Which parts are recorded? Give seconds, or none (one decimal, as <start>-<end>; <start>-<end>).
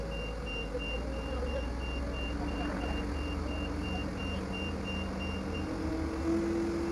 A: 0.0-6.9